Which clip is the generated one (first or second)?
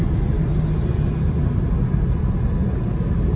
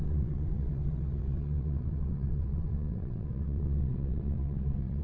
second